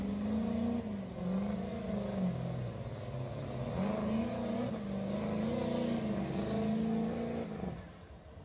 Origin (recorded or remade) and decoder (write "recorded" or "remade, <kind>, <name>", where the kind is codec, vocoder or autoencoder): recorded